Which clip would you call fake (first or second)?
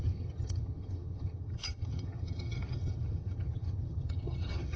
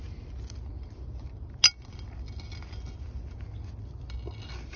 first